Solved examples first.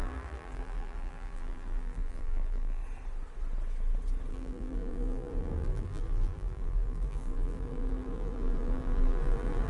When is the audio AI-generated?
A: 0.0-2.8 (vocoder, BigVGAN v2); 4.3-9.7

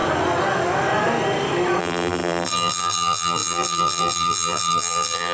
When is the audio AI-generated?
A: 1.8-5.3 (vocoder, BigVGAN v2)

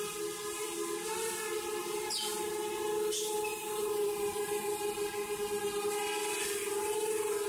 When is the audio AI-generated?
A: 1.8-2.4 (vocoder, BigVGAN v2); 3.5-5.9

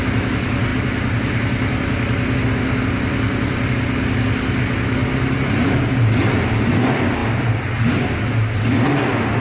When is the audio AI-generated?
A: none

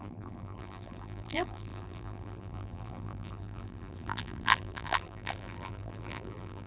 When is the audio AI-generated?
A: 0.0-6.7 (vocoder, BigVGAN v2)